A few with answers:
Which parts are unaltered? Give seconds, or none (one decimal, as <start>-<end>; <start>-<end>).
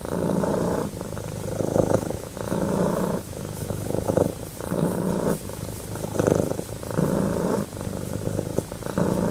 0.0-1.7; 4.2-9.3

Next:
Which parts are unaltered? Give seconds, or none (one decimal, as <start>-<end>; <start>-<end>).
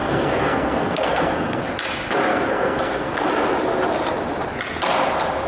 1.6-2.3; 3.3-5.5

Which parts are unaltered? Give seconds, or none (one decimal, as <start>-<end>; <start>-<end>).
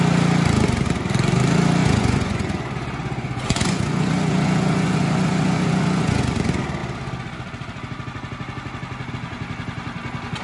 0.0-1.8; 6.2-10.4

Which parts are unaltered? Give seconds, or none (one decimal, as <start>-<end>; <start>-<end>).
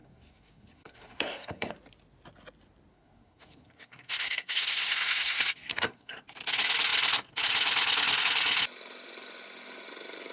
1.7-2.9; 6.1-10.3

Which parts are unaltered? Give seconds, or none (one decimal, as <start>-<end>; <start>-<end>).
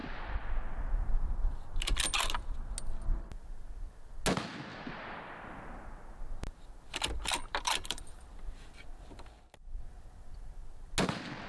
0.6-7.5; 8.2-11.5